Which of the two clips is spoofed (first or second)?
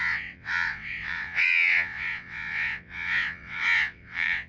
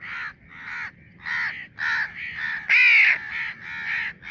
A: first